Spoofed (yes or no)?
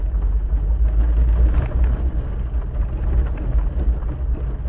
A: no